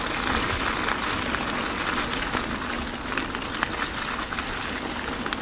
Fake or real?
real